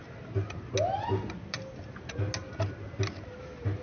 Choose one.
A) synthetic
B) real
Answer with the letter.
B